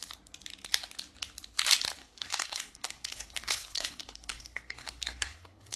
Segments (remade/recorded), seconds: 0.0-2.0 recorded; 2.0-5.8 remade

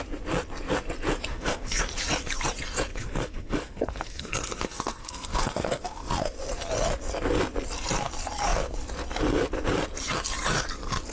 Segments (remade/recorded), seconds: 0.0-1.3 recorded; 1.3-1.8 remade; 1.8-2.9 recorded; 2.9-6.1 remade; 6.1-11.1 recorded

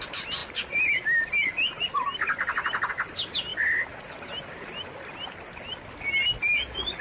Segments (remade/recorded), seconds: 0.0-7.0 recorded